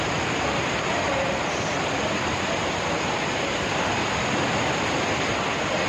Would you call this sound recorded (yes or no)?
no